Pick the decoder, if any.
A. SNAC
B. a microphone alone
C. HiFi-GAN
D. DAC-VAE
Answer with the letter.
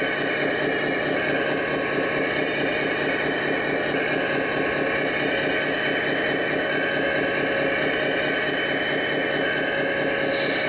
B